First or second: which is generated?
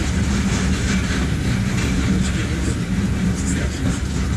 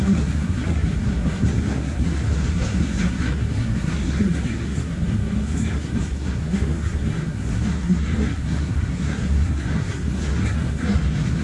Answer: second